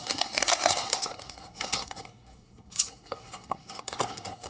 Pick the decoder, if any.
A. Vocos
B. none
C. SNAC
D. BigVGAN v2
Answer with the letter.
C